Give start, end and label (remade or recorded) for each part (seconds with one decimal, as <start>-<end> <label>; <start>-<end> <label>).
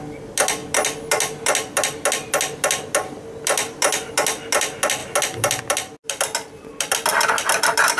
0.0-8.0 recorded